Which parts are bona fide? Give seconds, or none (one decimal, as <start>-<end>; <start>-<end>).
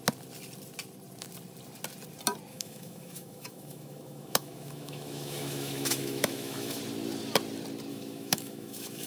0.0-2.5; 6.8-7.9